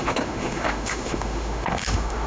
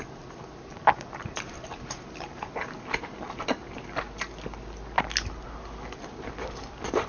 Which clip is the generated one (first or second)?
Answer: first